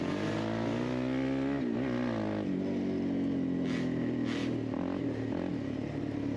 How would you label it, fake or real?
real